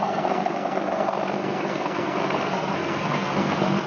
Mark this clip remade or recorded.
remade